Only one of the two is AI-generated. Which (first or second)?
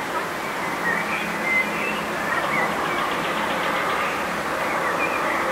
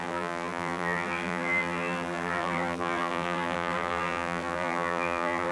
second